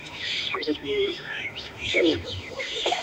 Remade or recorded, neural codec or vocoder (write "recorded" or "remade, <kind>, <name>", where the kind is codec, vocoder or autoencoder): remade, autoencoder, DAC-VAE